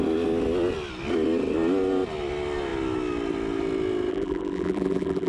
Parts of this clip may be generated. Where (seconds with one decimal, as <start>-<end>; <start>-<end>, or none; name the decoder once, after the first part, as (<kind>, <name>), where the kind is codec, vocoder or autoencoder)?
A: 4.1-5.3 (vocoder, BigVGAN v2)